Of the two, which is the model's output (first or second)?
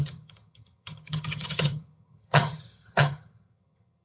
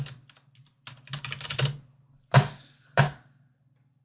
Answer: first